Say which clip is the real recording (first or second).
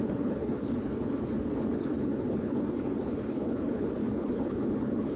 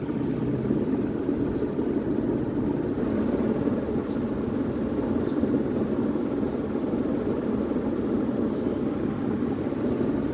second